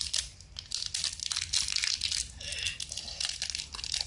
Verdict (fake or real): real